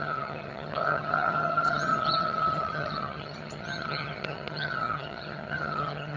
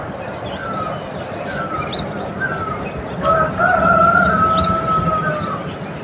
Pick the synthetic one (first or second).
first